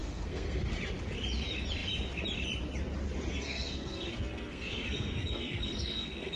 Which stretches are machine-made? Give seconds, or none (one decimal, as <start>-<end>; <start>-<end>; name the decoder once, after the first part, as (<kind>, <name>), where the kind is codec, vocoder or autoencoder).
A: 0.0-0.6 (codec, SNAC); 3.3-6.4